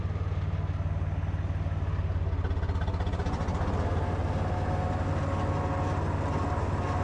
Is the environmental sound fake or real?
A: real